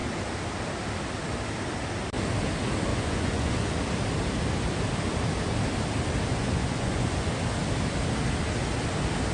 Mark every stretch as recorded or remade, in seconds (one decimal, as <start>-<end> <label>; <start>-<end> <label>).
0.0-2.9 recorded; 2.9-3.8 remade; 3.8-6.3 recorded; 6.3-7.3 remade; 7.3-9.3 recorded